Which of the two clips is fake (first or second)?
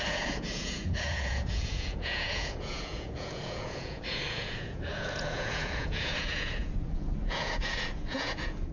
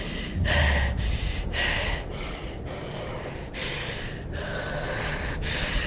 first